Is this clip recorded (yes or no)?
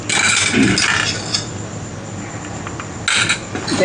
yes